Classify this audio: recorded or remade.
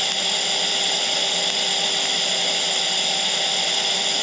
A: recorded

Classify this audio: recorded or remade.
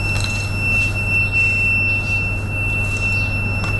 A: recorded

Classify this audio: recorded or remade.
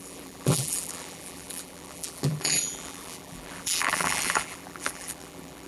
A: remade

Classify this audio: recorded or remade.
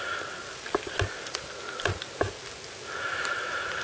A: recorded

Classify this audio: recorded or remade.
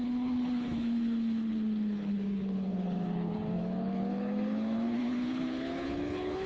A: remade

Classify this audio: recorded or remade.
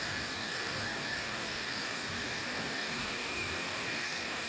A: remade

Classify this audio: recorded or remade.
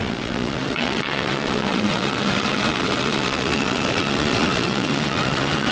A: remade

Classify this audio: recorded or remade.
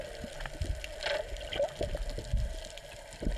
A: recorded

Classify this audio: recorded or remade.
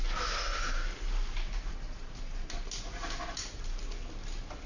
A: recorded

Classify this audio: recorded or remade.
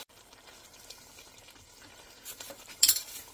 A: remade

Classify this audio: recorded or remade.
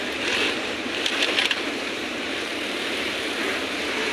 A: remade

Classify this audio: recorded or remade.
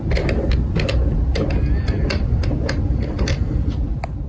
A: recorded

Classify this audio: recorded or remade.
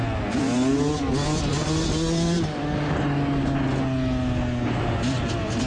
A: recorded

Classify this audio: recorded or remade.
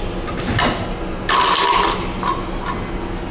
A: recorded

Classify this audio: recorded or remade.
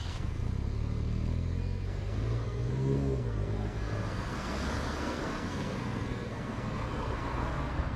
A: remade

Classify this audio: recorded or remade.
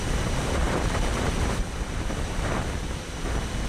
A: remade